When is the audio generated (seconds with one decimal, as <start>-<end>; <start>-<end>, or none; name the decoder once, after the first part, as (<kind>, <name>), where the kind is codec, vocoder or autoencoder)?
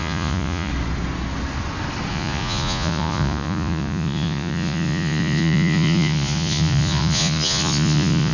0.0-0.7 (vocoder, Vocos); 2.1-8.3